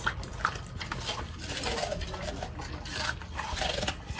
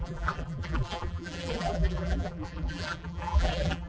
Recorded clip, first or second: first